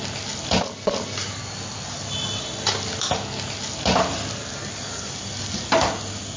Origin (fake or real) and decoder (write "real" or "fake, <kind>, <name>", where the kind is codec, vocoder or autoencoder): real